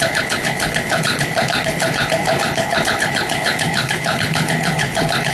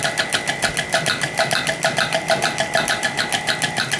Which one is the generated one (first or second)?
first